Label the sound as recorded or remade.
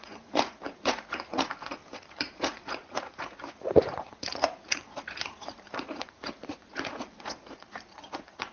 remade